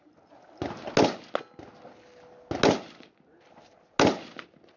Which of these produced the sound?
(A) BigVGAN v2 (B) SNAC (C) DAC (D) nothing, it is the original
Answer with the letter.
D